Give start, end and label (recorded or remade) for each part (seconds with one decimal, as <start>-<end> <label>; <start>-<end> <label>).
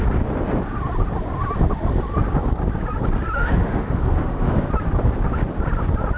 0.0-3.4 recorded; 3.4-4.7 remade; 4.7-6.2 recorded